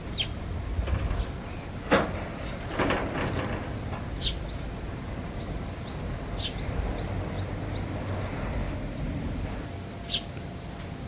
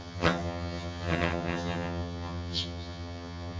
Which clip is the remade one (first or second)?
second